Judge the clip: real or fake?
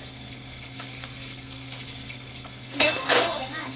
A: fake